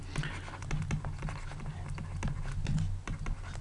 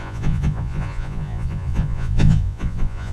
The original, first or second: first